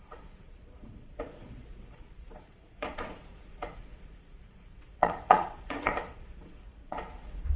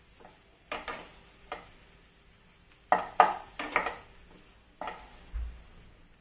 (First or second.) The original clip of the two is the second